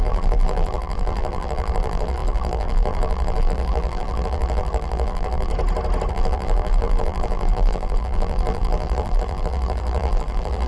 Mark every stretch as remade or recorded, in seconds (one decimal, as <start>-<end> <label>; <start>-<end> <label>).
0.0-5.5 remade; 5.5-6.1 recorded; 6.1-10.7 remade